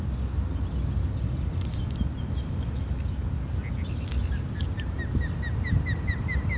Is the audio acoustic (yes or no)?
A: yes